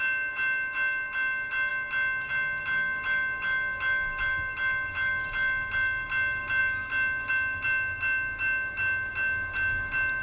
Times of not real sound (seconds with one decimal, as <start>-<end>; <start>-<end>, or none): none